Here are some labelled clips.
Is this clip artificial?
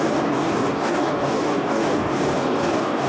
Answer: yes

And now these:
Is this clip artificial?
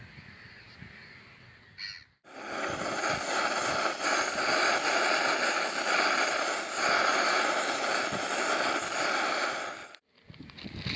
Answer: no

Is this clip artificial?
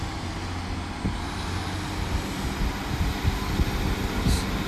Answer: no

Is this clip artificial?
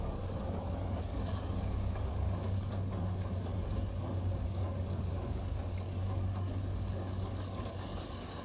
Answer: yes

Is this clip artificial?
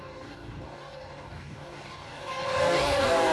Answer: yes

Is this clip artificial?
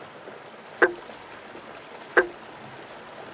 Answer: no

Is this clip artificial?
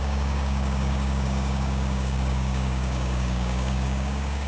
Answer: yes